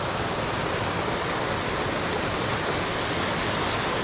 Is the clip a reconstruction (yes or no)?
no